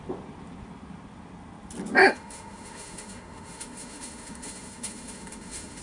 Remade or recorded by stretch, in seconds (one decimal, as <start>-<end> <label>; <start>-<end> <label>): 0.0-2.0 recorded; 2.0-5.8 remade